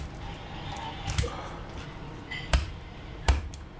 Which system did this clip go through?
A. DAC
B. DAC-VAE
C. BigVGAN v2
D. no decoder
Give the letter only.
D